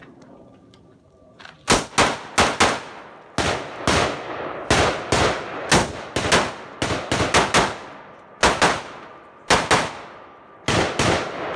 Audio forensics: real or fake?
real